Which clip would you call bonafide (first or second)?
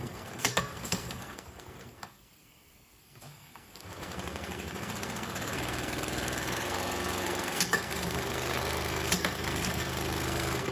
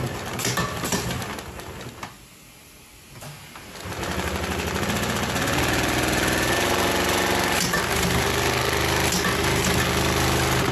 second